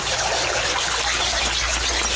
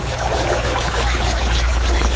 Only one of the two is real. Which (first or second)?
first